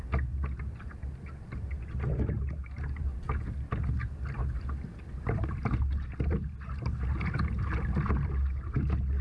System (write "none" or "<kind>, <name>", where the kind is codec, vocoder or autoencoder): none